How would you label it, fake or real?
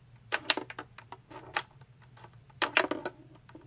real